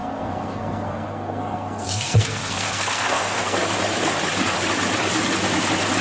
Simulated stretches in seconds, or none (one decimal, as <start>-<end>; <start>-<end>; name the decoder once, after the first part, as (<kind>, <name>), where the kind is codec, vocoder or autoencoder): 0.0-3.6 (codec, SNAC)